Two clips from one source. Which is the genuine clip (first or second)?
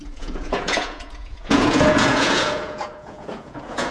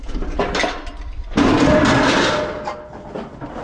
second